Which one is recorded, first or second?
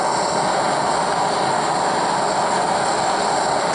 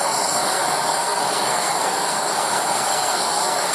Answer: first